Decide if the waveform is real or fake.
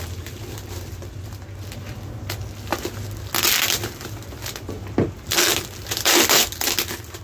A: real